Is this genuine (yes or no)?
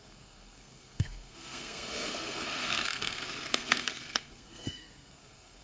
no